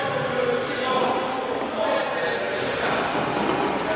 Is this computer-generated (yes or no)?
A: no